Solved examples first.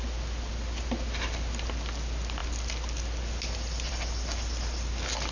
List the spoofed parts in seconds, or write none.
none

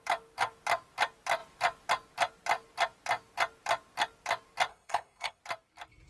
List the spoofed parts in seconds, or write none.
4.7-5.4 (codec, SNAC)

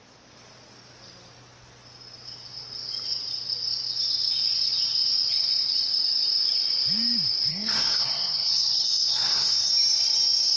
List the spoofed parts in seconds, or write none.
7.5-9.7 (codec, SNAC)